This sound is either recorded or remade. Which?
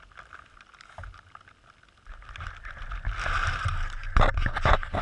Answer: recorded